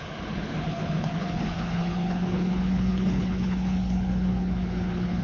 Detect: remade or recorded remade